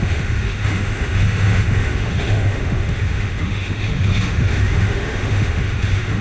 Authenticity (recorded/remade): remade